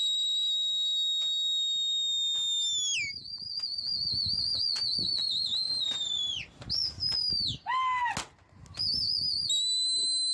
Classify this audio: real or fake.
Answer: real